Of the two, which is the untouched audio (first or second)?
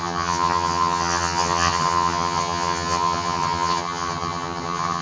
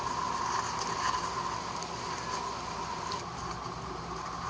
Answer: second